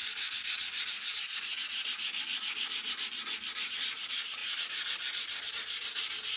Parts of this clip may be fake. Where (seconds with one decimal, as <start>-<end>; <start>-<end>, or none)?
0.0-3.8; 4.4-5.5